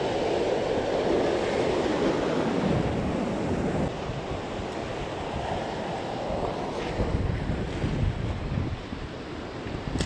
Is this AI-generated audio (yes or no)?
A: no